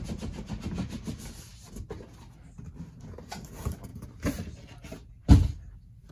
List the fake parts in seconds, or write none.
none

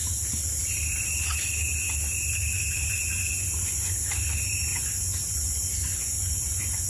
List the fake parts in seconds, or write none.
3.0-4.0 (vocoder, Vocos); 4.7-6.9

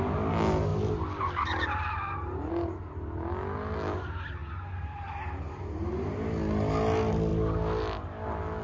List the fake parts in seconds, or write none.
none

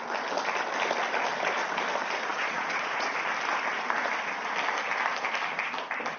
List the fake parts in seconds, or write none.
2.3-3.1 (vocoder, Vocos)

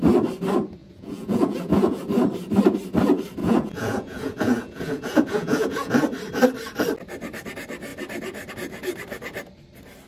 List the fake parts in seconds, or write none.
0.8-2.0 (vocoder, Vocos); 3.4-6.0

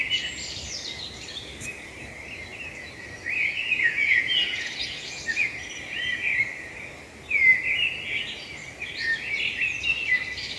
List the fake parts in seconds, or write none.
3.6-5.2 (vocoder, Vocos)

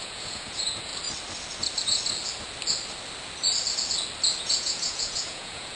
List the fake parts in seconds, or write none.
0.0-0.9 (vocoder, Vocos); 4.4-5.8

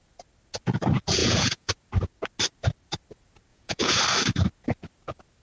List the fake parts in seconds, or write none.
1.2-1.7 (vocoder, Vocos); 3.5-4.0